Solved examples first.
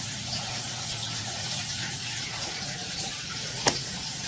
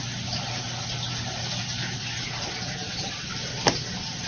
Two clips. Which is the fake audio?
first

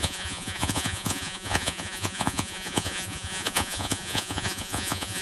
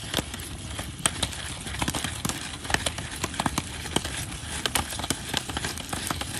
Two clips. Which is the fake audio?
first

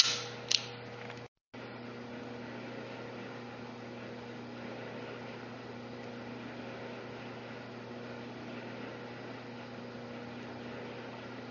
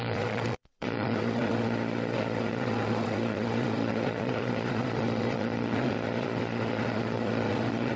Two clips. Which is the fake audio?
second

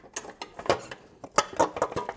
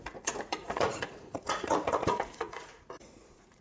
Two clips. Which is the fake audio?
second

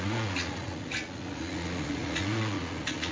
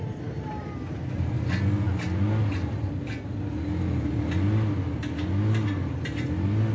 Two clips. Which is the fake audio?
first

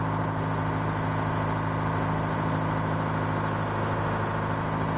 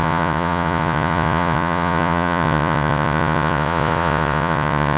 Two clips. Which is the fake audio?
second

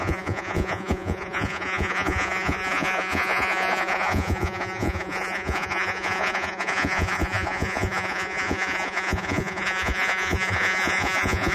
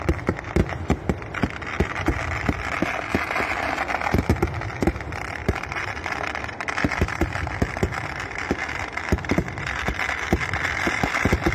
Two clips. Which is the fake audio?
first